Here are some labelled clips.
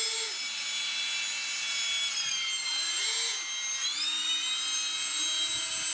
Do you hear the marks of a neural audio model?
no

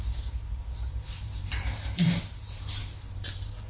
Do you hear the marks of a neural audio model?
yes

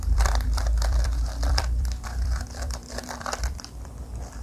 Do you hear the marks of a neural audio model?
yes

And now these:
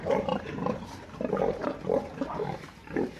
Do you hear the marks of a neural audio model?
yes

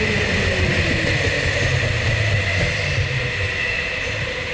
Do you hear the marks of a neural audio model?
no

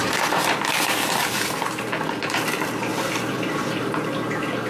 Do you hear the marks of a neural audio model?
yes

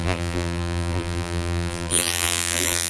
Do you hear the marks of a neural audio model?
yes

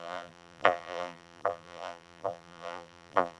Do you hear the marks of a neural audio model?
yes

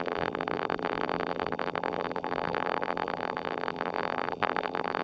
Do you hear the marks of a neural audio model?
yes